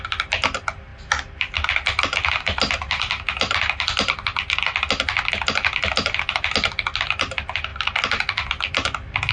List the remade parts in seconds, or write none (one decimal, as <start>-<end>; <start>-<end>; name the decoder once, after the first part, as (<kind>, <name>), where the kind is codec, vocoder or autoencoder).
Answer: none